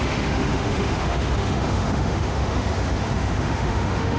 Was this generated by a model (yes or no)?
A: yes